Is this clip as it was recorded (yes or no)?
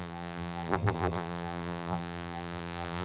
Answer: no